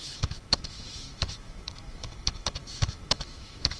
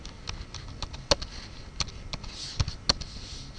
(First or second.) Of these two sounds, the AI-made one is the first